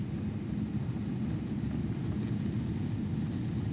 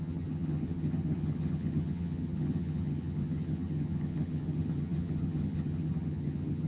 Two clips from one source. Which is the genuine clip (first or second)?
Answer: first